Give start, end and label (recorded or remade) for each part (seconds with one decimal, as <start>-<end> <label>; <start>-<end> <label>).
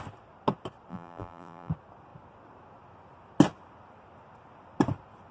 0.0-0.9 recorded; 0.9-1.7 remade; 1.7-5.3 recorded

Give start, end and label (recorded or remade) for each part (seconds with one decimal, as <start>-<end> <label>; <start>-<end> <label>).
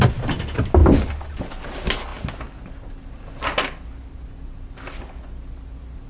0.0-6.1 recorded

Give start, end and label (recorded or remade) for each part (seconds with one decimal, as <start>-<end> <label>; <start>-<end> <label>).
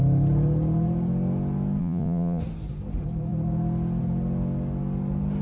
0.0-1.8 recorded; 1.8-2.4 remade; 2.4-5.4 recorded